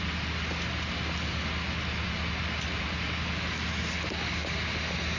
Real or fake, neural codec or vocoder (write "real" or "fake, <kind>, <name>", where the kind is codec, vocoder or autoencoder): real